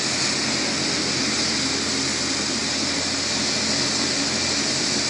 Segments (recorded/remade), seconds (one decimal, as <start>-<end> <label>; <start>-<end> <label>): 0.0-5.1 recorded